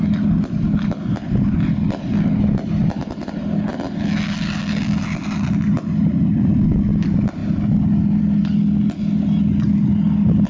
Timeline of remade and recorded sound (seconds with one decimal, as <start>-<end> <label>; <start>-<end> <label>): 0.0-10.5 recorded